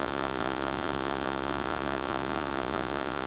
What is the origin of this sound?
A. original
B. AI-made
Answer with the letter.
B